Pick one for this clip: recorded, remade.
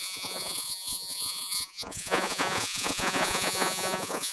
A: remade